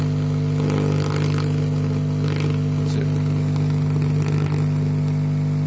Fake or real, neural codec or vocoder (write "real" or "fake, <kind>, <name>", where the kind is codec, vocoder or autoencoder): real